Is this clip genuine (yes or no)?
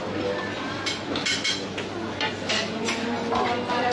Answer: yes